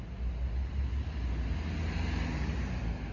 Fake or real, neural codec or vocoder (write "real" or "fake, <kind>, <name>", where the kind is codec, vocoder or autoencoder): real